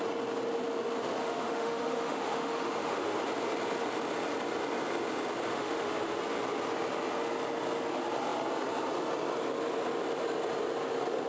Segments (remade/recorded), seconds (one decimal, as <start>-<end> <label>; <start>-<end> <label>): 0.0-1.2 recorded; 1.2-3.2 remade; 3.2-5.5 recorded; 5.5-6.2 remade; 6.2-11.3 recorded